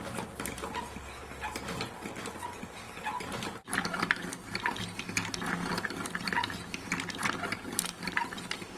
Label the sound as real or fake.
real